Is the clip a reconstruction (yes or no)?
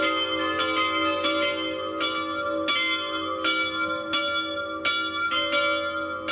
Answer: no